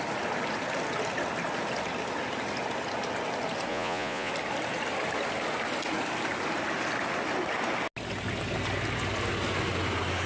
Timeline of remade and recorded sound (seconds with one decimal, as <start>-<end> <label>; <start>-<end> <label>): 0.0-3.7 recorded; 3.7-4.3 remade; 4.3-10.3 recorded